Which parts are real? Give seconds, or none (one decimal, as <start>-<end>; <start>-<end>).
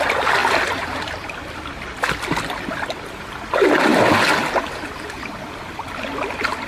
0.0-0.4; 2.7-6.7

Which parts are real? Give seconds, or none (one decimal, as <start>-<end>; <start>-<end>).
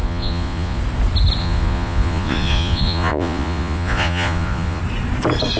0.8-1.4; 4.8-5.6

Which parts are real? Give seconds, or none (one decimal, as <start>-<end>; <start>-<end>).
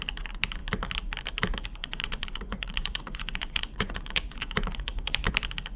0.0-1.8; 5.3-5.8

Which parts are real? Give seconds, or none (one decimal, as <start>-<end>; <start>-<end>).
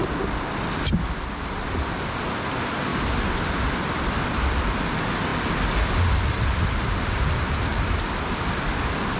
0.0-2.9; 3.5-7.7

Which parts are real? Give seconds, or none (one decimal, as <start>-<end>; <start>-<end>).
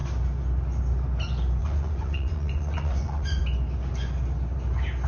0.0-1.6; 3.4-5.1